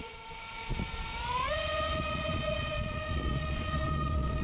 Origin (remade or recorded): remade